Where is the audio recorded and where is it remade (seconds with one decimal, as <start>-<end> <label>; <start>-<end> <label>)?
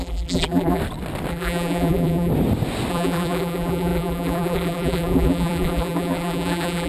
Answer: 0.0-0.8 remade; 0.8-1.3 recorded; 1.3-2.3 remade; 2.3-2.9 recorded; 2.9-6.9 remade